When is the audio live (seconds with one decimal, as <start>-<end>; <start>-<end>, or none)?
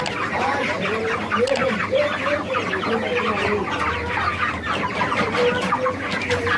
0.0-6.6